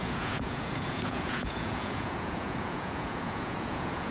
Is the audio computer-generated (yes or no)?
yes